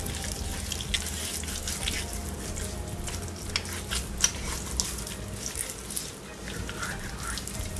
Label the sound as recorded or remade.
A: recorded